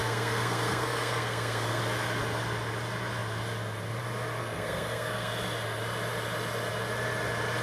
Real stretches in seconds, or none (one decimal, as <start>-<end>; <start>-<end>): 1.8-4.4; 5.3-7.6